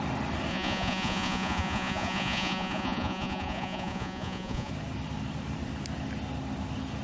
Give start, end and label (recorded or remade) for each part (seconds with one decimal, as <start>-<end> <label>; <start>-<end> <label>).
0.0-0.5 recorded; 0.5-4.7 remade; 4.7-7.0 recorded